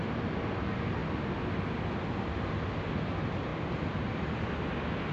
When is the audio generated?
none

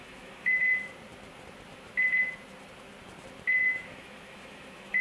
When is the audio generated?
0.0-0.7 (autoencoder, DAC-VAE); 3.6-5.0

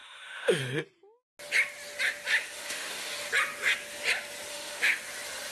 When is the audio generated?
0.0-0.6 (autoencoder, DAC-VAE); 2.4-3.1; 4.5-5.0

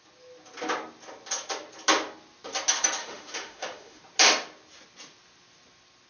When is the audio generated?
3.0-4.0 (autoencoder, DAC-VAE)

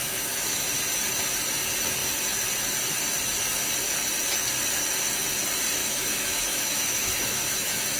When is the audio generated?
0.0-0.6 (autoencoder, DAC-VAE); 5.8-8.0

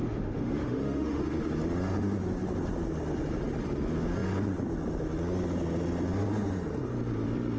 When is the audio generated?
0.0-1.2 (autoencoder, DAC-VAE)